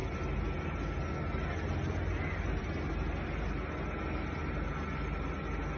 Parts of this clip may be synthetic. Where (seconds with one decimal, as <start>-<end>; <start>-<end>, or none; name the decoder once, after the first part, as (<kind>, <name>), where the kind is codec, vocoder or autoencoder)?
none